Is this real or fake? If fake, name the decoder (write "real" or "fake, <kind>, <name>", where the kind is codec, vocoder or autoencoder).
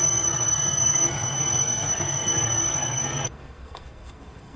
fake, codec, SNAC